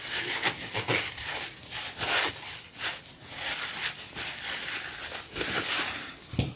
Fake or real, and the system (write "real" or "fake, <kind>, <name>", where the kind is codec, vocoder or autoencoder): real